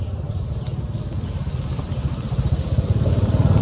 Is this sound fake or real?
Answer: real